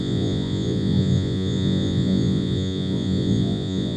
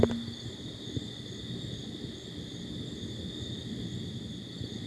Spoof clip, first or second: first